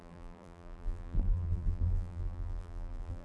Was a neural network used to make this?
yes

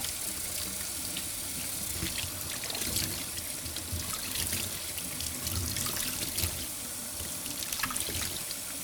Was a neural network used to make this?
no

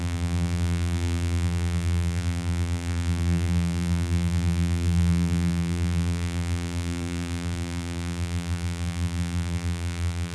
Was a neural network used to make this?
yes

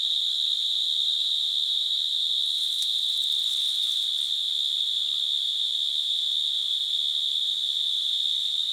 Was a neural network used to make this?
no